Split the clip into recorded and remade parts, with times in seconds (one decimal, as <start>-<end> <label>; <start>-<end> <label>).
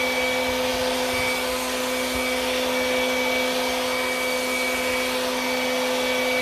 0.0-6.4 recorded